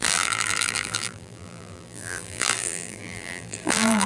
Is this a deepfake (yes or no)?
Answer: yes